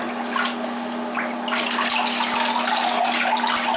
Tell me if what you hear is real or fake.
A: real